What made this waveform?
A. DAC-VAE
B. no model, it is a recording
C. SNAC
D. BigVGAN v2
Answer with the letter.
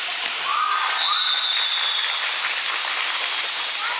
B